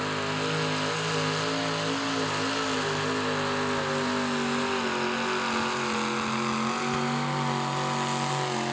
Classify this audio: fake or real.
real